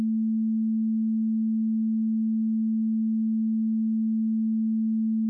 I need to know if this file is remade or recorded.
recorded